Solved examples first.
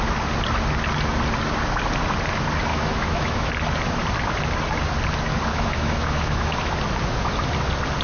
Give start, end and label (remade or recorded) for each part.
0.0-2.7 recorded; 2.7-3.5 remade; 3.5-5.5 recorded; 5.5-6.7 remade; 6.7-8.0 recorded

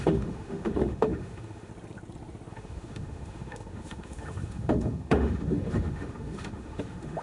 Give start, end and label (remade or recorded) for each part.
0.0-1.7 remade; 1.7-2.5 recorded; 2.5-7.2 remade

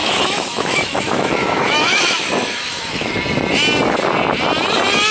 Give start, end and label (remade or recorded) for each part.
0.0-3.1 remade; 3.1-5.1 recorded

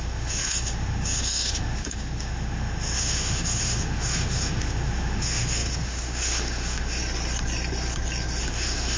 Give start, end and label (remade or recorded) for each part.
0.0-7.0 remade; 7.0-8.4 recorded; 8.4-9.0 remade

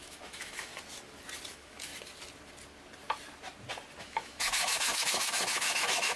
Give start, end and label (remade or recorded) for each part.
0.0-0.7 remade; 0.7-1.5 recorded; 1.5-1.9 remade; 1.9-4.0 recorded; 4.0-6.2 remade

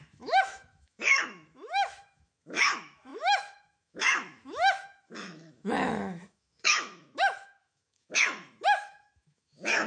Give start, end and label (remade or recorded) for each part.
0.0-9.9 remade

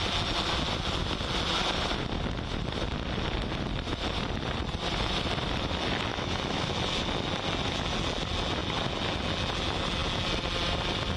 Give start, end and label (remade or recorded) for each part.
0.0-6.1 recorded; 6.1-6.7 remade; 6.7-11.2 recorded